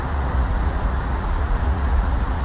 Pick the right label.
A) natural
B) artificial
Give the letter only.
B